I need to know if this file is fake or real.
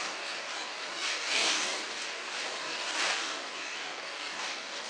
fake